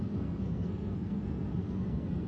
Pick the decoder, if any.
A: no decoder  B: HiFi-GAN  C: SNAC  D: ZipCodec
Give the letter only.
C